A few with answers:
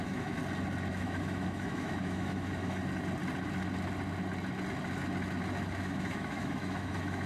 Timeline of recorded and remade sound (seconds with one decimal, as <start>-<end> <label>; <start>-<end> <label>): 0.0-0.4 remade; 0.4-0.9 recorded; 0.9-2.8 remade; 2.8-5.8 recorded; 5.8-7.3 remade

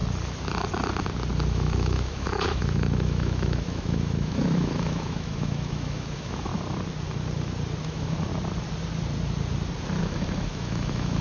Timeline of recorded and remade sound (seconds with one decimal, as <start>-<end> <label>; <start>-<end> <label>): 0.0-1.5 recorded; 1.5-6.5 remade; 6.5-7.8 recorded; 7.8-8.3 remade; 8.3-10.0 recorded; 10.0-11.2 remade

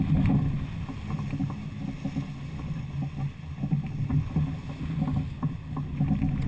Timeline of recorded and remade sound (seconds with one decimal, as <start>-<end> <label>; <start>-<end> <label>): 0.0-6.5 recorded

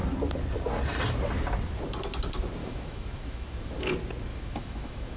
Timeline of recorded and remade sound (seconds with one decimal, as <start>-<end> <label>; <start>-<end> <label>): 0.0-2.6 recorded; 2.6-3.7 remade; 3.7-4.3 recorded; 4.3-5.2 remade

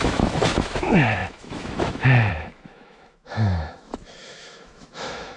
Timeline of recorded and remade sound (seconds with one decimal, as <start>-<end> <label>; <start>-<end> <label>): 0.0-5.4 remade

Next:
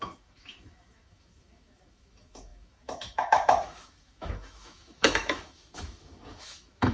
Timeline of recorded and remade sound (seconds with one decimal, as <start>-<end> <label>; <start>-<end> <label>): 0.0-6.9 remade

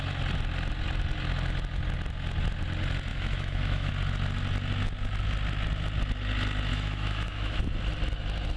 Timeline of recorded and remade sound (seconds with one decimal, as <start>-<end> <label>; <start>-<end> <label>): 0.0-3.1 recorded; 3.1-3.9 remade; 3.9-6.7 recorded; 6.7-7.6 remade; 7.6-8.6 recorded

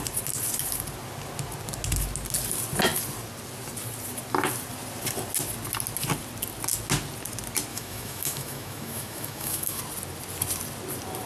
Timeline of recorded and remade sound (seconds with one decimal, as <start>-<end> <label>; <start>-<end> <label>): 0.0-7.7 recorded; 7.7-9.8 remade; 9.8-11.3 recorded